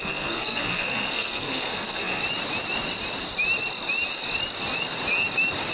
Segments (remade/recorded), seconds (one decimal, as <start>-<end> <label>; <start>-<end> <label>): 0.0-2.2 remade; 2.2-5.7 recorded